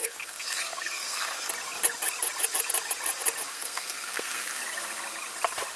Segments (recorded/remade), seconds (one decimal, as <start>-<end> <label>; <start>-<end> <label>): 0.0-1.5 remade; 1.5-3.5 recorded; 3.5-4.6 remade; 4.6-5.8 recorded